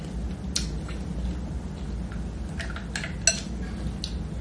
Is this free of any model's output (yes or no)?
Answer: yes